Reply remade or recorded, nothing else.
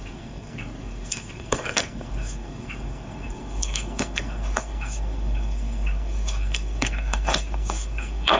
remade